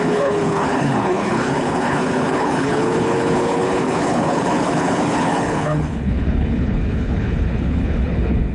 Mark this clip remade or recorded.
remade